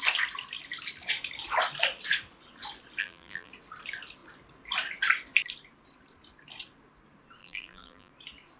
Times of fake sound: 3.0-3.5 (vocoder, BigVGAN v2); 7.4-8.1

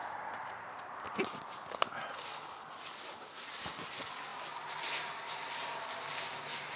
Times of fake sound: none

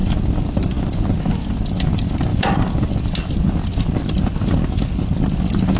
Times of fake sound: none

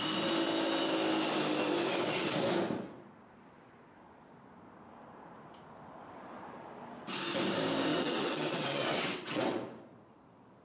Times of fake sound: 7.9-9.6 (vocoder, WaveNeXt)